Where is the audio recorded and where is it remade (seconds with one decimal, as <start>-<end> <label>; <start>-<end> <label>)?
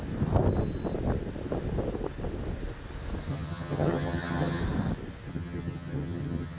0.0-3.3 recorded; 3.3-4.6 remade; 4.6-5.3 recorded; 5.3-6.6 remade